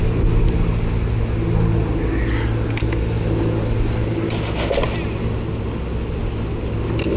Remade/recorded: recorded